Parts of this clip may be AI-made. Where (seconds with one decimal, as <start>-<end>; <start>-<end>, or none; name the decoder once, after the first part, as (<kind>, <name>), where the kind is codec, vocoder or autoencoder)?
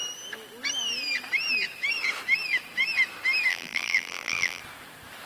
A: 3.5-4.6 (vocoder, BigVGAN v2)